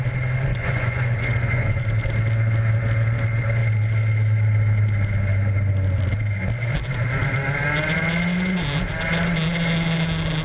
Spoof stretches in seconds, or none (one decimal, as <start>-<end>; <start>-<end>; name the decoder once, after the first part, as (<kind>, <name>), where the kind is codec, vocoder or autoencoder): 0.5-1.8 (vocoder, Vocos)